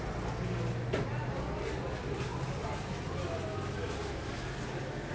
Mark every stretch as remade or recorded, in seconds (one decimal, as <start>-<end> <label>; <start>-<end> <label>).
0.0-5.1 recorded